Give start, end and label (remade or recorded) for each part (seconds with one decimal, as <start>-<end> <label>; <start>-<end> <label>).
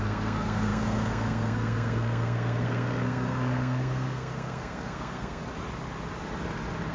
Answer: 0.0-5.4 remade; 5.4-6.9 recorded